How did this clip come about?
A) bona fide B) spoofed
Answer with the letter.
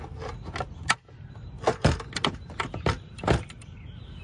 A